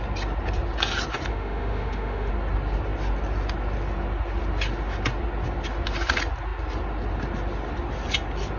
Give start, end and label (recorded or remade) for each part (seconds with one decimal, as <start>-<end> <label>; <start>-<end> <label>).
0.0-1.3 recorded; 1.3-2.3 remade; 2.3-8.6 recorded